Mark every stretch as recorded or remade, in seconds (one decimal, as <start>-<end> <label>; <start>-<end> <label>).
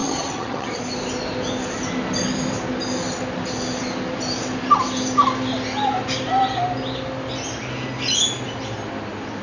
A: 0.0-0.8 remade; 0.8-9.4 recorded